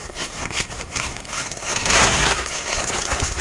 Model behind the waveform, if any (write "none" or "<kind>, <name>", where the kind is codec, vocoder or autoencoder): codec, SNAC